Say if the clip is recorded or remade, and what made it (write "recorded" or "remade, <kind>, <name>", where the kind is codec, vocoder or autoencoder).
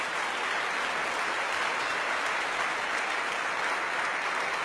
recorded